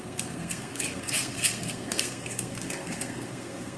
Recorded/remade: remade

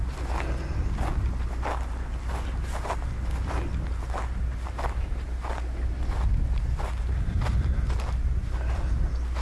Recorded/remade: recorded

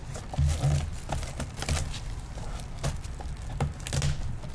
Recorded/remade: recorded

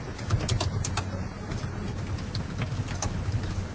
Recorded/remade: recorded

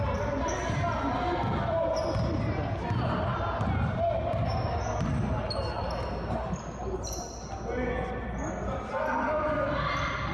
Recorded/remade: recorded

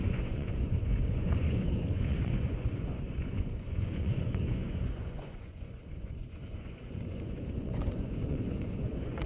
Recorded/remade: remade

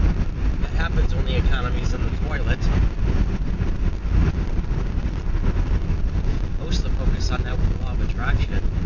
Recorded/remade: recorded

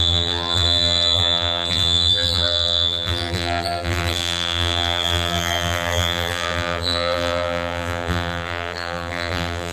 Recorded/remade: remade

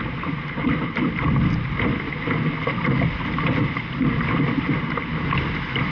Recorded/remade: recorded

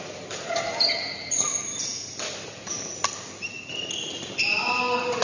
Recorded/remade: recorded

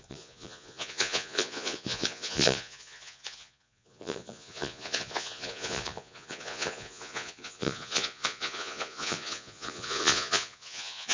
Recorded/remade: remade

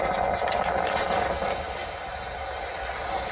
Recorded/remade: recorded